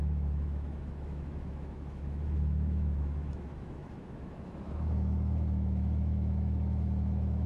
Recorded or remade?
remade